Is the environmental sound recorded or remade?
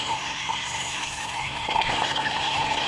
remade